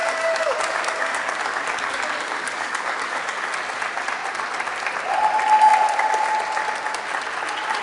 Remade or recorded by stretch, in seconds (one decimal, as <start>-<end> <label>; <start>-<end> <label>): 0.0-3.5 remade; 3.5-7.8 recorded